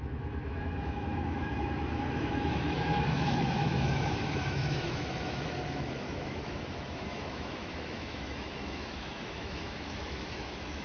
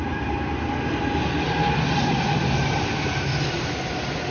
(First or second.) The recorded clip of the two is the second